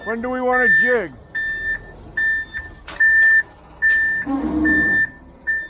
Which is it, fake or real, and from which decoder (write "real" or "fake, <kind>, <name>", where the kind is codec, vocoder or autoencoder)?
real